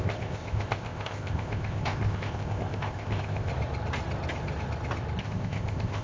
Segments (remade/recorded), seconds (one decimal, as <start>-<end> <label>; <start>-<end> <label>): 0.0-3.5 remade; 3.5-5.2 recorded; 5.2-6.0 remade